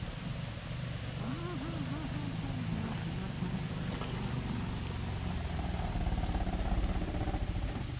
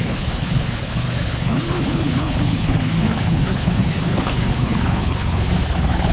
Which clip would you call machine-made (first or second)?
second